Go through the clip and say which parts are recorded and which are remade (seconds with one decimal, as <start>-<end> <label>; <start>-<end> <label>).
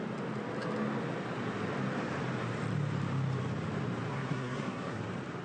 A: 0.0-4.1 recorded; 4.1-5.0 remade; 5.0-5.4 recorded